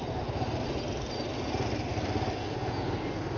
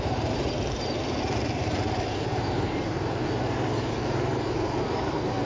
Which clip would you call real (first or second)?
first